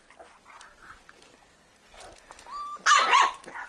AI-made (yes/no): no